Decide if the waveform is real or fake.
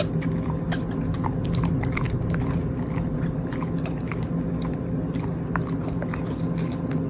real